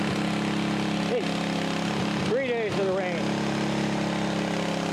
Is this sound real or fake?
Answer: real